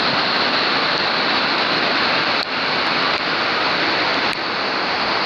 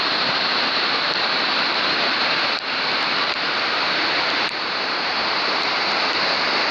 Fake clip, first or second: second